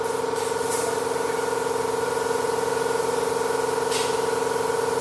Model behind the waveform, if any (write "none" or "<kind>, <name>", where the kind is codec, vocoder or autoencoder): vocoder, BigVGAN v2